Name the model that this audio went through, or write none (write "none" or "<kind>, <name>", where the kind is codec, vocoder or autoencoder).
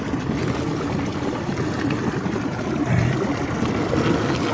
none